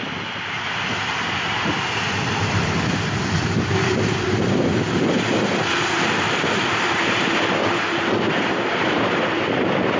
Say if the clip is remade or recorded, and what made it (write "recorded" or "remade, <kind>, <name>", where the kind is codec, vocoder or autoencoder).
remade, vocoder, BigVGAN v2